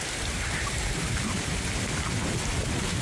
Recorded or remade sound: recorded